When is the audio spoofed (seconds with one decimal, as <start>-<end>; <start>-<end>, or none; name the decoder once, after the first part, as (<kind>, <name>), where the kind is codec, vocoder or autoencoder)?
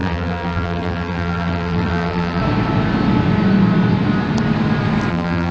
0.0-2.4 (vocoder, BigVGAN v2); 5.1-5.5